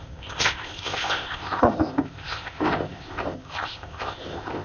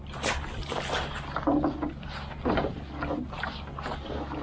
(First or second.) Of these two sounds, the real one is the second